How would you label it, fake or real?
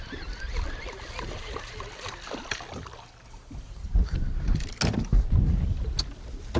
real